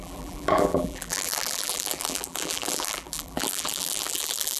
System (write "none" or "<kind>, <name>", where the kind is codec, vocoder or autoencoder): vocoder, BigVGAN v2